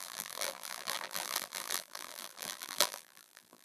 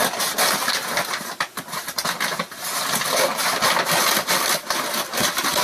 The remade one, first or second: first